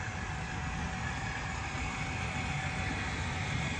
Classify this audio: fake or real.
real